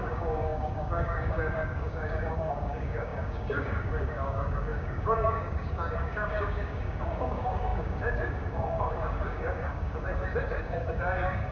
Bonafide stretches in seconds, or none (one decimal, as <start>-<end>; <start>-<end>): none